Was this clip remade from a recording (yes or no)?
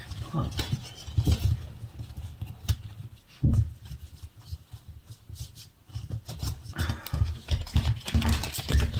no